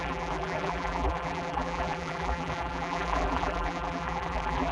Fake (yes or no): yes